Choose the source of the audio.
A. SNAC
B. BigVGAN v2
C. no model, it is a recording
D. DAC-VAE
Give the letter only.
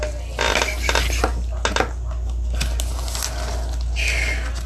C